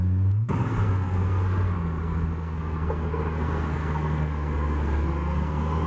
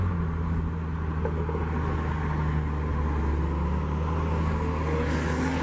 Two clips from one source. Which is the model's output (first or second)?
first